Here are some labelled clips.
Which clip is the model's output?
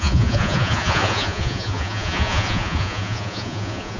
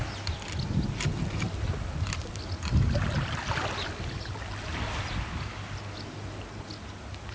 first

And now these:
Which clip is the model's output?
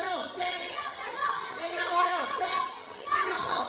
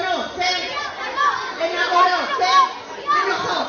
first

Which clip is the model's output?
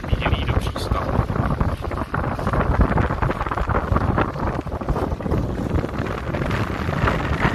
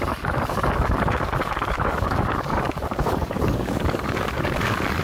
second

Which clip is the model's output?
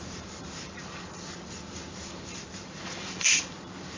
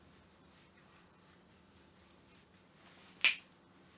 first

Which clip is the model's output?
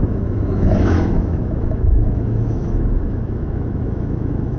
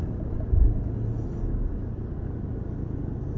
first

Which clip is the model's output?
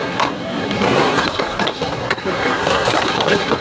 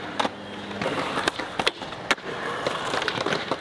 first